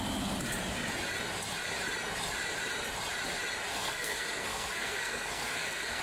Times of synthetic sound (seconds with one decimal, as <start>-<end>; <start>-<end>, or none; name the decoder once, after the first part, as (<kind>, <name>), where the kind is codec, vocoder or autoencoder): 3.7-6.0 (codec, SNAC)